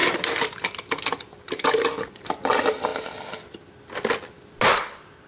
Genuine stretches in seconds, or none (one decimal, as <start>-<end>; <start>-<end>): 0.0-5.3

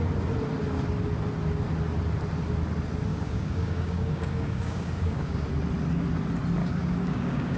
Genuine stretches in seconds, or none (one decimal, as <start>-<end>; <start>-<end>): 0.0-3.1; 5.5-6.6

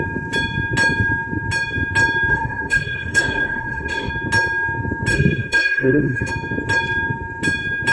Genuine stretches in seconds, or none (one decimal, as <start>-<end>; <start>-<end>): 0.0-2.3; 4.1-5.1; 6.3-7.9

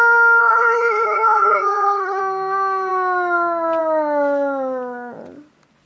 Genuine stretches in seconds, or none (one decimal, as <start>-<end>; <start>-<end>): 0.0-0.4; 2.2-5.9

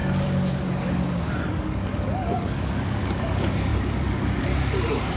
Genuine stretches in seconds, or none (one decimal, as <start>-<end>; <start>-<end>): none